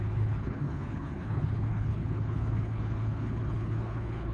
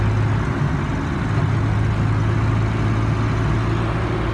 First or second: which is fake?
first